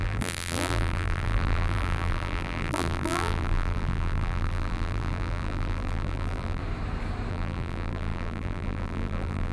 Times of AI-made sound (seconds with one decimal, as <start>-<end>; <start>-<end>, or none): 0.0-6.6; 7.3-9.5